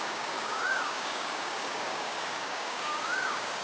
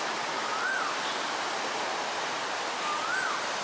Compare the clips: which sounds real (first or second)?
second